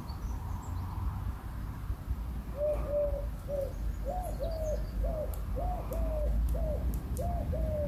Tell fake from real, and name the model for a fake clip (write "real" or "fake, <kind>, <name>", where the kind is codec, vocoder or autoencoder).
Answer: real